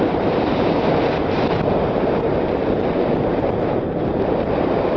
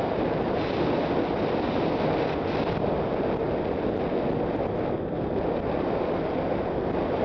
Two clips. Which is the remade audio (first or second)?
first